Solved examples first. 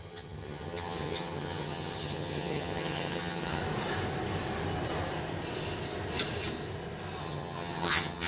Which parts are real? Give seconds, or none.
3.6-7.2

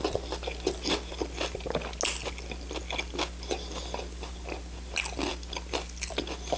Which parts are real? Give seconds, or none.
0.0-6.6